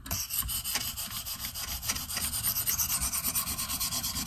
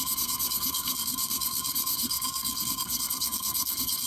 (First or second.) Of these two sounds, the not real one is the second